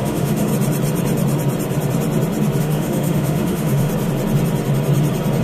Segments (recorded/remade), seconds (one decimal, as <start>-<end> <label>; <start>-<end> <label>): 0.0-0.5 remade; 0.5-2.6 recorded; 2.6-3.9 remade; 3.9-5.4 recorded